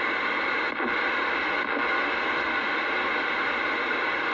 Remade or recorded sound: recorded